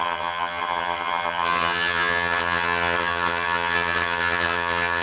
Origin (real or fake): fake